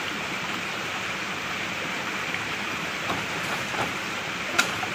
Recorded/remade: remade